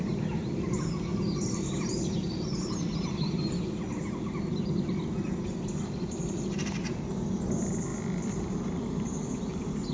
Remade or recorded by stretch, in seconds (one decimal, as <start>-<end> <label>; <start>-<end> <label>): 0.0-9.9 recorded